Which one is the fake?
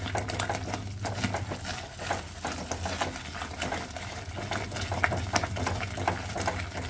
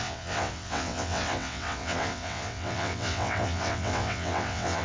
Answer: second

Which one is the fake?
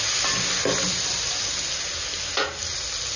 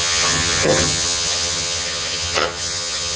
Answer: second